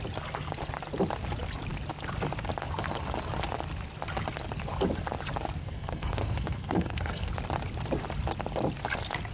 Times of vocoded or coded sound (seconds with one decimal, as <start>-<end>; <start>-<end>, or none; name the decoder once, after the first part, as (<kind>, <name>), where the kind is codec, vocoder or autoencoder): 5.6-7.3 (codec, SNAC)